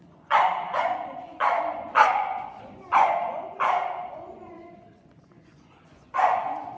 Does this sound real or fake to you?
fake